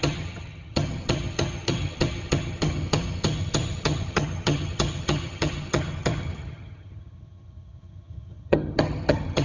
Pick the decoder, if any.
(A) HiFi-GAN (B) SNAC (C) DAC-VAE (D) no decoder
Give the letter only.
A